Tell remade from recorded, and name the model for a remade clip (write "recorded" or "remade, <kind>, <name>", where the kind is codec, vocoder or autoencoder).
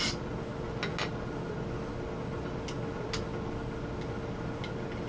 recorded